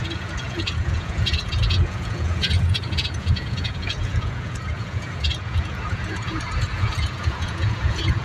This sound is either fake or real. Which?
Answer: fake